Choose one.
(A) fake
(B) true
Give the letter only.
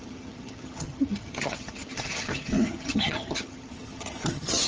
A